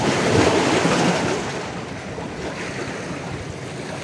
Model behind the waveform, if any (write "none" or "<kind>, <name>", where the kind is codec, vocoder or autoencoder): none